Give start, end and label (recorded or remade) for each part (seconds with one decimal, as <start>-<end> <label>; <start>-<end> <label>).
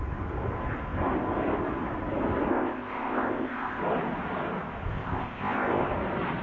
0.0-2.5 recorded; 2.5-3.8 remade; 3.8-4.9 recorded; 4.9-5.9 remade; 5.9-6.4 recorded